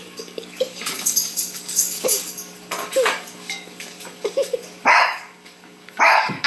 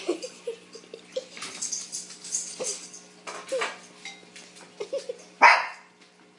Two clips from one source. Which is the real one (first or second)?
second